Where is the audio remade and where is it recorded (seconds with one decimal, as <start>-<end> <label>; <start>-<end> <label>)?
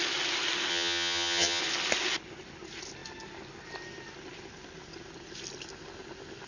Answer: 0.0-0.7 recorded; 0.7-1.6 remade; 1.6-6.5 recorded